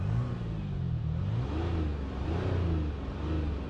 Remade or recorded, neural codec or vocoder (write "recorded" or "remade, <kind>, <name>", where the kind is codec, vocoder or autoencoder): recorded